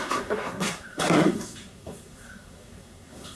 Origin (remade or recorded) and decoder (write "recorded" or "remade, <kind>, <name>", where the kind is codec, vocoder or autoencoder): remade, codec, SNAC